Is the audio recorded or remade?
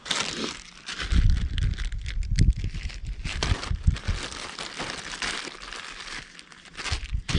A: recorded